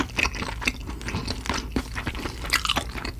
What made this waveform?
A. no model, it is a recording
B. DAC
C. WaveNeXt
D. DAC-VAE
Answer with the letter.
A